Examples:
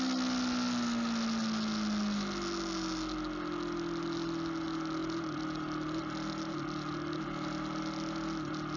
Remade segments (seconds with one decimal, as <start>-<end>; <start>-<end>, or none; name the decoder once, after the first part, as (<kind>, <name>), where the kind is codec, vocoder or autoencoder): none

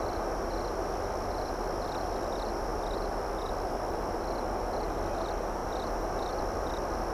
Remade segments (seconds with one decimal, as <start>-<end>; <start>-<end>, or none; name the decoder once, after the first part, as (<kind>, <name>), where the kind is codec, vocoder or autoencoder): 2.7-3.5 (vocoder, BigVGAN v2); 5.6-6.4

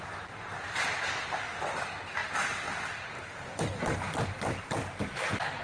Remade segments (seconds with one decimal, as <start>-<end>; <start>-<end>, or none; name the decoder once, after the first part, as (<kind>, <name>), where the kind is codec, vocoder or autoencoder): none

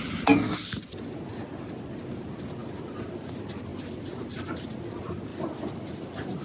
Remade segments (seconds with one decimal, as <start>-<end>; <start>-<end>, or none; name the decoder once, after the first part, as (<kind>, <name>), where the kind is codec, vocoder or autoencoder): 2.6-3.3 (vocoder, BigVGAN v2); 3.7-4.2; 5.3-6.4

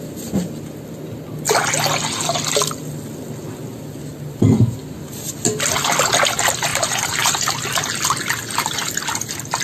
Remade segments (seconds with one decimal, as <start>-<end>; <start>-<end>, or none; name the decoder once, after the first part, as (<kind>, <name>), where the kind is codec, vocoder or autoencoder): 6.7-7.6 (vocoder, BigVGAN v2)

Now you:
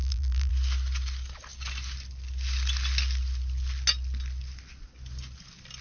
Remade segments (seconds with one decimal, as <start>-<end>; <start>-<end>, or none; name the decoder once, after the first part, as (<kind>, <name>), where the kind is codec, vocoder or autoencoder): 0.0-0.5 (vocoder, BigVGAN v2)